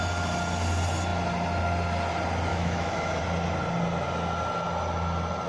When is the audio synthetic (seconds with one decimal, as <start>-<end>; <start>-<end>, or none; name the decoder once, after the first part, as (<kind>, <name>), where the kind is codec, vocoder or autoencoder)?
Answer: 2.5-3.2 (autoencoder, DAC-VAE)